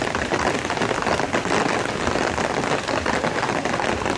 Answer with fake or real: real